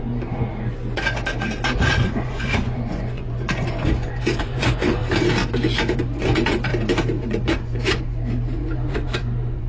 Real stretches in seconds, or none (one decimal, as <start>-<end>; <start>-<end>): 5.0-5.5; 6.7-7.2